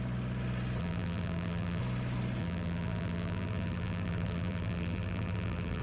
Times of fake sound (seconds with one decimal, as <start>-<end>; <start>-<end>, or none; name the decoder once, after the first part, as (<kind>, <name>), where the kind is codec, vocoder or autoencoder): 0.8-1.8 (vocoder, BigVGAN v2); 2.4-5.8